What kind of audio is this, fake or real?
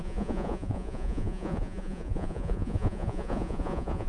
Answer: fake